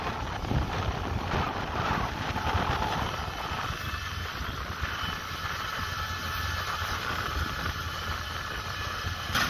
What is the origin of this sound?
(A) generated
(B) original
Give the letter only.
A